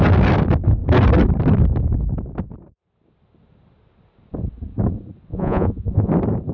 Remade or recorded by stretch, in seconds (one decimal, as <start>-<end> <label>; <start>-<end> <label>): 0.0-5.3 recorded; 5.3-6.1 remade; 6.1-6.5 recorded